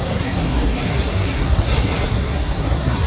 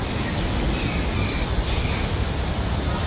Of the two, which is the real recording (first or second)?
second